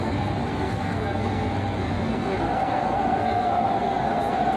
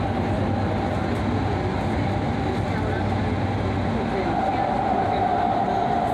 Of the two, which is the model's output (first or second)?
first